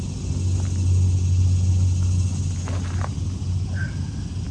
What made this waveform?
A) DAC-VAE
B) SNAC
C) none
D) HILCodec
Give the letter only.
C